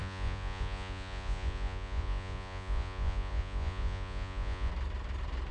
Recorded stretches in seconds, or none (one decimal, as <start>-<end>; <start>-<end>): 4.7-5.5